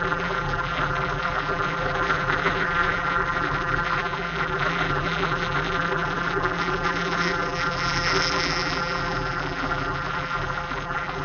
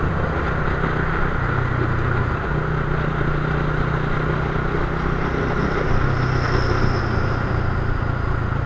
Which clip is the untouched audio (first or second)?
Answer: second